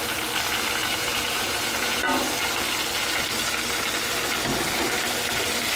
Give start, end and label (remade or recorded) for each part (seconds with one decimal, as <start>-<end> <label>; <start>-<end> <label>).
0.0-0.8 recorded; 0.8-2.0 remade; 2.0-5.8 recorded